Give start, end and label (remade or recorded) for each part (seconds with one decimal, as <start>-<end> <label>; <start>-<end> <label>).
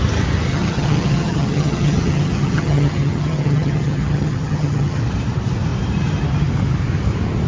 0.0-0.5 recorded; 0.5-5.0 remade; 5.0-7.5 recorded